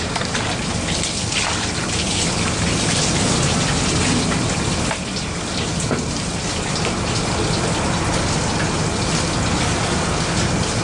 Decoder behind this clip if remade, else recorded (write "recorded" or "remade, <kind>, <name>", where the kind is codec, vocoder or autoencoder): recorded